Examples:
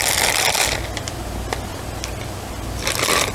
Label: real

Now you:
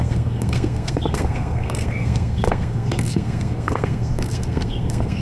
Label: fake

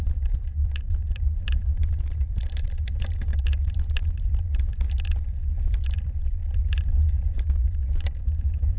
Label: fake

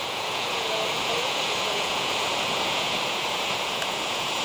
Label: fake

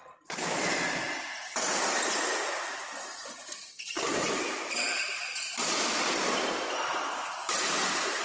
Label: real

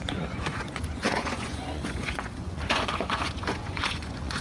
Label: fake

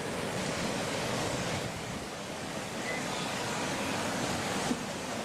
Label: fake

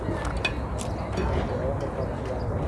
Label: real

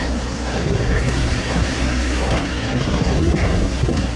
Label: fake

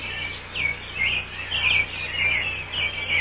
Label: real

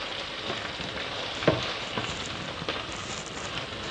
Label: real